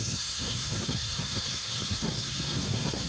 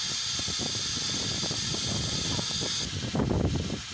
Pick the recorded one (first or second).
second